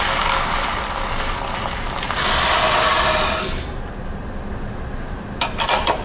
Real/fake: real